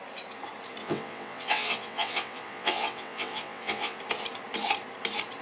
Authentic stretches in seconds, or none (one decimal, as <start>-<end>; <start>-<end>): 0.0-0.8; 4.0-5.4